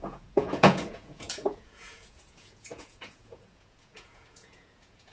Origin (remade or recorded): remade